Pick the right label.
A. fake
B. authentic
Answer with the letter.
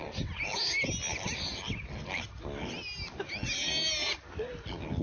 B